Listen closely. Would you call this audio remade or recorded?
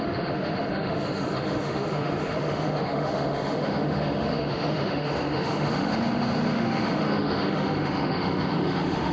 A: remade